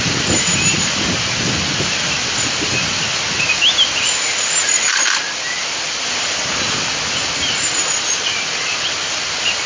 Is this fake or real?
real